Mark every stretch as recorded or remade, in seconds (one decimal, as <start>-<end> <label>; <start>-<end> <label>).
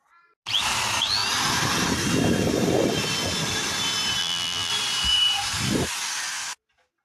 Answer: 0.0-4.2 recorded; 4.2-4.7 remade; 4.7-7.0 recorded